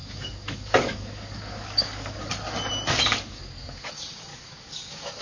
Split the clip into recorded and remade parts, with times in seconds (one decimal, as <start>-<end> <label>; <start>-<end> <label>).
0.0-2.3 remade; 2.3-3.1 recorded; 3.1-3.9 remade; 3.9-4.3 recorded; 4.3-5.2 remade

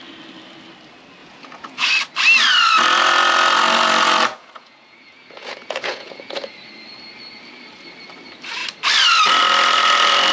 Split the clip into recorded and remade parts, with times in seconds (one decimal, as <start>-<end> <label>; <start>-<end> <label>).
0.0-1.2 recorded; 1.2-1.9 remade; 1.9-4.3 recorded; 4.3-6.6 remade; 6.6-10.3 recorded

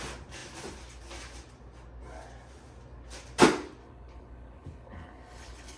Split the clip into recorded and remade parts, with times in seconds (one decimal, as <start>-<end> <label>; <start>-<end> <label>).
0.0-3.8 recorded; 3.8-5.8 remade

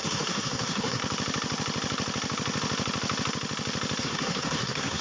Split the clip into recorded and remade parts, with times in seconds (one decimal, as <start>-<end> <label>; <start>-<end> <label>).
0.0-1.0 remade; 1.0-4.0 recorded; 4.0-5.0 remade

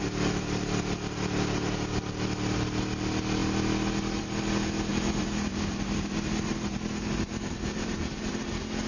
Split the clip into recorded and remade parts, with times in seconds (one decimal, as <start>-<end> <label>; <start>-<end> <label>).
0.0-4.9 recorded; 4.9-8.3 remade; 8.3-8.9 recorded

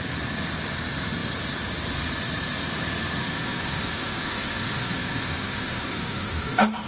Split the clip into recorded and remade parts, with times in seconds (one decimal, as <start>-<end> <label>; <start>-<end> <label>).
0.0-3.2 recorded; 3.2-6.9 remade